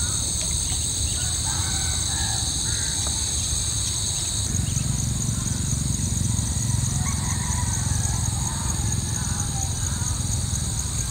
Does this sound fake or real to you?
real